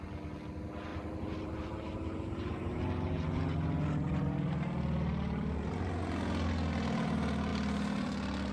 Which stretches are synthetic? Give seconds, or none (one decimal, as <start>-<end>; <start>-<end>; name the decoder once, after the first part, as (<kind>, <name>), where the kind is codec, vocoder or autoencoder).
0.9-2.8 (vocoder, BigVGAN v2)